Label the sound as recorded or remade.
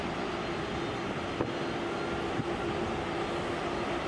recorded